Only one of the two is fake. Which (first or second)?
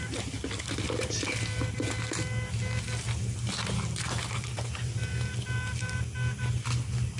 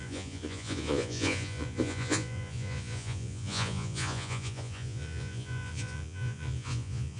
second